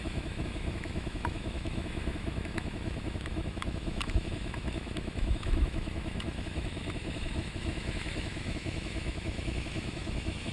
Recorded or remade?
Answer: remade